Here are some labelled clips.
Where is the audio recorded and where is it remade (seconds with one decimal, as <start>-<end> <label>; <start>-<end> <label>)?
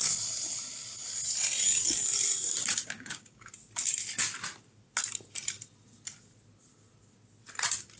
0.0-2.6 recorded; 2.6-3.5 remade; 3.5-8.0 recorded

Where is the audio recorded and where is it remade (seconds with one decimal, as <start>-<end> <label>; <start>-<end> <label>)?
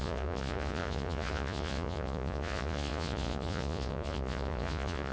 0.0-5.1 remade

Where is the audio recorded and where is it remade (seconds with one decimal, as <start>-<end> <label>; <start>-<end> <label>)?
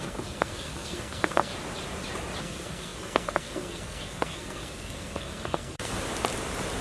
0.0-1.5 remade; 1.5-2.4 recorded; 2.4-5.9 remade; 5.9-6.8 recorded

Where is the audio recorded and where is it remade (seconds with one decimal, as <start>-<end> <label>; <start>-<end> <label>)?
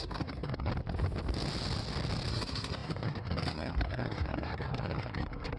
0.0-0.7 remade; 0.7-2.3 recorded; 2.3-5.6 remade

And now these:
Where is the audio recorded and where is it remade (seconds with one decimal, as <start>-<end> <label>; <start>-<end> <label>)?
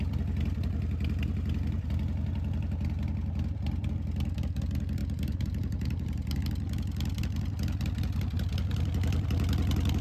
0.0-5.0 recorded; 5.0-6.4 remade; 6.4-10.0 recorded